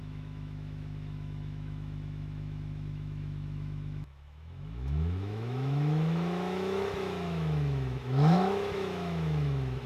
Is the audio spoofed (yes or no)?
yes